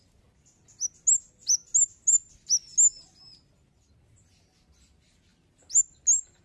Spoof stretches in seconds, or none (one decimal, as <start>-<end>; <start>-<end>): none